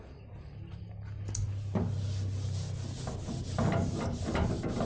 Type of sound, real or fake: real